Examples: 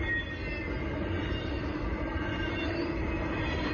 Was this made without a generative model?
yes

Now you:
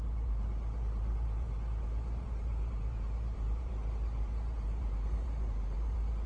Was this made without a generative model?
no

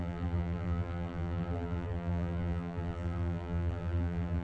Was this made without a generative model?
no